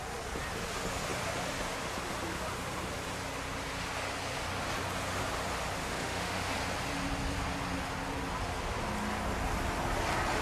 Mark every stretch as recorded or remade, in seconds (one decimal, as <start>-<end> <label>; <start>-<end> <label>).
0.0-5.8 recorded; 5.8-6.5 remade; 6.5-10.4 recorded